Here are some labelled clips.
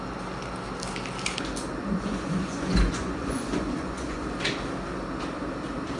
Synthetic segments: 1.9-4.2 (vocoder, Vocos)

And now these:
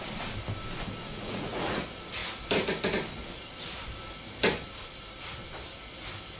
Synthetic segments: 1.1-1.8 (vocoder, Vocos)

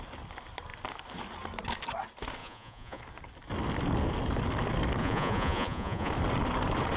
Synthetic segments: 2.4-3.0 (vocoder, Vocos); 5.0-6.1

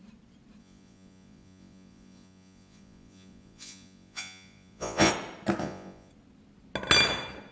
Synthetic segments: 0.6-5.1 (vocoder, Vocos); 5.6-6.1

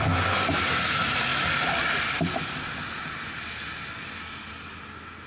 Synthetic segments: none

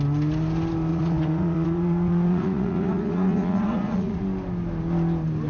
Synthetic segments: 0.9-4.2 (vocoder, Vocos)

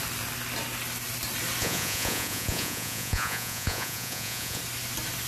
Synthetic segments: 1.6-4.6 (vocoder, Vocos)